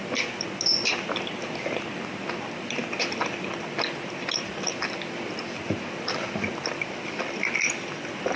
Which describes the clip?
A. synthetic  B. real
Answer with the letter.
B